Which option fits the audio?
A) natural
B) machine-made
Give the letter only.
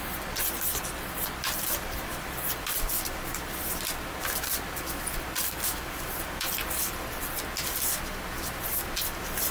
B